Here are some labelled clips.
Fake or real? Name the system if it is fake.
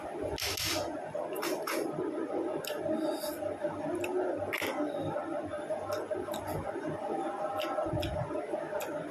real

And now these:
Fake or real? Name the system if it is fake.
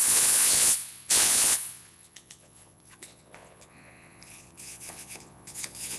fake, vocoder, Vocos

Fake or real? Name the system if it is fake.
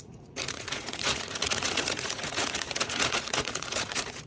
fake, vocoder, Vocos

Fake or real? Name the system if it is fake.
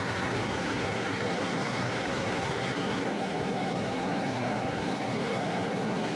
fake, codec, SNAC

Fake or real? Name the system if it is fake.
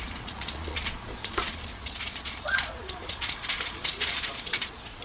fake, vocoder, Vocos